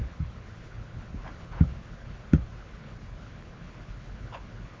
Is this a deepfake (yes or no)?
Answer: yes